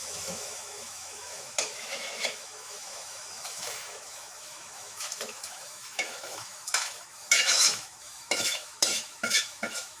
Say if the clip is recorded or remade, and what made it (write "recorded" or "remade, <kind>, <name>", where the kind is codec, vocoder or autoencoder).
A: remade, autoencoder, DAC-VAE